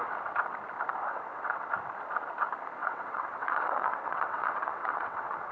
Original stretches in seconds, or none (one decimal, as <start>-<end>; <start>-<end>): 0.0-1.1; 1.7-2.8